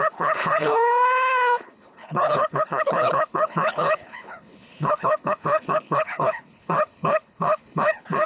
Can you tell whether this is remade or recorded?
remade